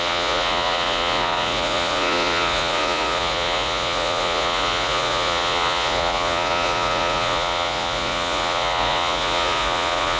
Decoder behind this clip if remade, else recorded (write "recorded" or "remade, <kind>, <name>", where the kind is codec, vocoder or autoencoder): remade, vocoder, Vocos